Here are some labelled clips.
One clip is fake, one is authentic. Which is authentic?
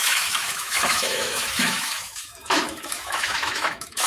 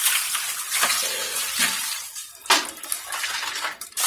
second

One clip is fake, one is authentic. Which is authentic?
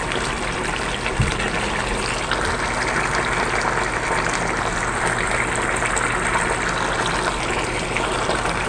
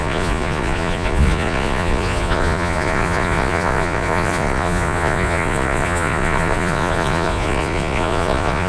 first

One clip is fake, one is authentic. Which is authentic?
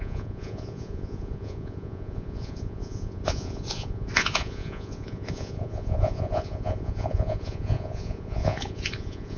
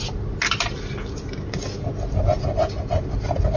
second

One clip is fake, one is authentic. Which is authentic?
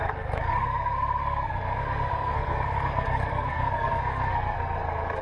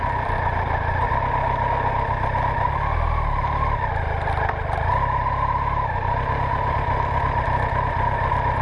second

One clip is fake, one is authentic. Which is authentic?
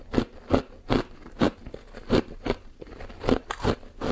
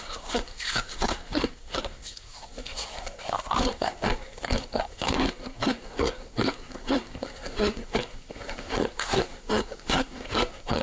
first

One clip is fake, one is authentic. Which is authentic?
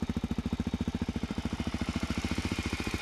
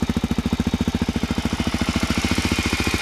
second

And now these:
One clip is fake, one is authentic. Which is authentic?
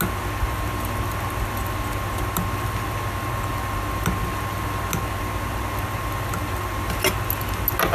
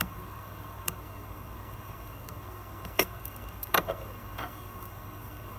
first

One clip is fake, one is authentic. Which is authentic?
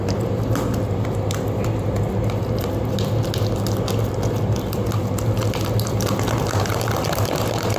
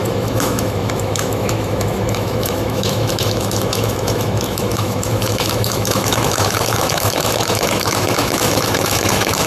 first